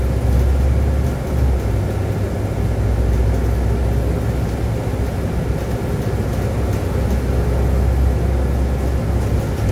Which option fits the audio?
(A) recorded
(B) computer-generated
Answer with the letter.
A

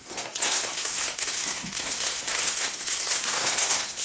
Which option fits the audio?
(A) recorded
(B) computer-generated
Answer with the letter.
B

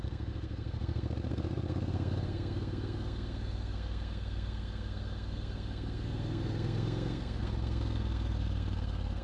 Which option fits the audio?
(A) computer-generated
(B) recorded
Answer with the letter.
A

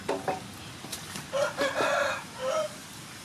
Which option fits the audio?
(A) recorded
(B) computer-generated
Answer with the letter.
A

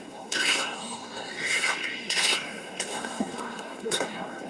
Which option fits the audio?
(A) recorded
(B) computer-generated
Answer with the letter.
B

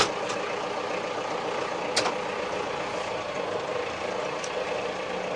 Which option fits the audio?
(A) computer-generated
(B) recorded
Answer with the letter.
B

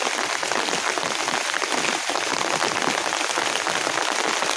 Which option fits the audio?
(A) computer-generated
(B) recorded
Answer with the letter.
B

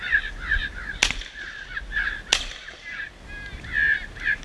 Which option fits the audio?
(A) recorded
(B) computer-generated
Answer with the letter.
A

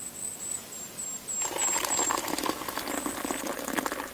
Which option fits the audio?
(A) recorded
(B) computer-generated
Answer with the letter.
A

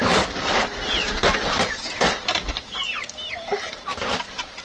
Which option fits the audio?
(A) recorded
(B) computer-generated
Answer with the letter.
A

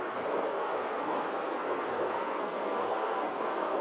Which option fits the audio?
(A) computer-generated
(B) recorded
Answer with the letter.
A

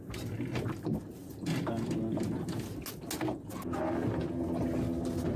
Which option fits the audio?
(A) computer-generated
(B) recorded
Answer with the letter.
B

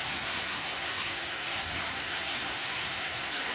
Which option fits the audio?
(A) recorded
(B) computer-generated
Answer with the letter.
B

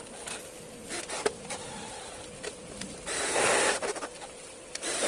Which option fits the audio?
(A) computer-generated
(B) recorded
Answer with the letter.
B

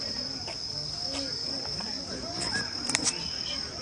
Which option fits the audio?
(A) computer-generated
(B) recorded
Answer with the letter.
B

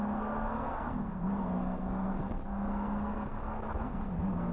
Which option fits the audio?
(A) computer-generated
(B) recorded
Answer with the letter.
A